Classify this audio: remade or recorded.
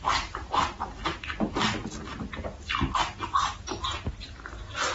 recorded